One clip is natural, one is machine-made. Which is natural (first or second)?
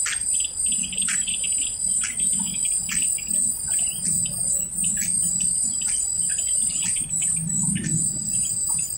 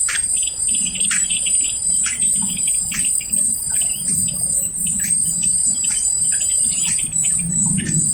first